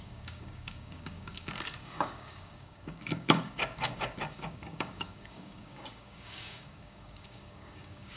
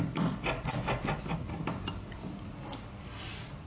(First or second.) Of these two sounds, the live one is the second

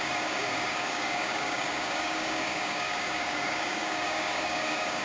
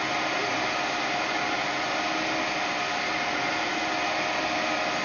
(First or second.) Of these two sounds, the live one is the second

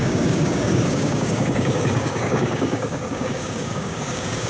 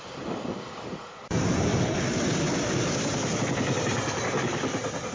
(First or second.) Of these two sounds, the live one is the second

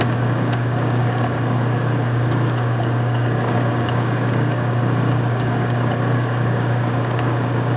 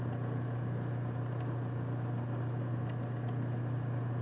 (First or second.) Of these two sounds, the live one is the second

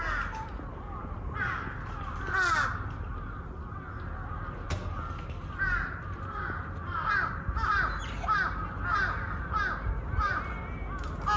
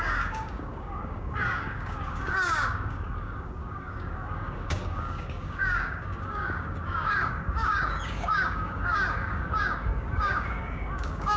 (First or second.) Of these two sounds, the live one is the first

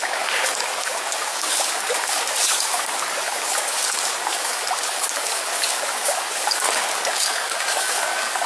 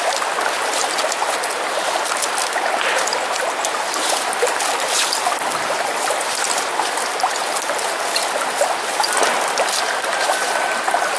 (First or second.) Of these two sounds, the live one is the second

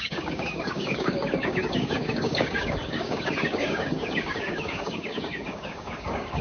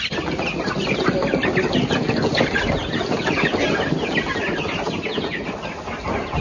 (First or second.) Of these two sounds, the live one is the second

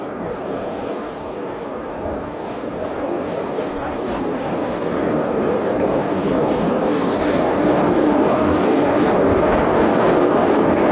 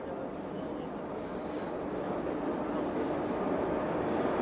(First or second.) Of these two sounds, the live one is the second